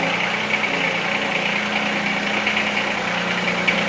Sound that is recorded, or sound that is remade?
recorded